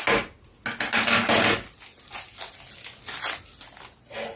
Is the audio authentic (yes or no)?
yes